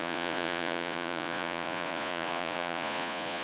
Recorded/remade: remade